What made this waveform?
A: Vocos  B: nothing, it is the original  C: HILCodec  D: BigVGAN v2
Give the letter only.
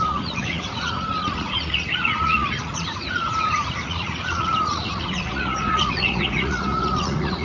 A